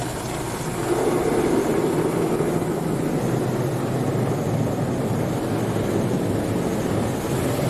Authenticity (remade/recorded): recorded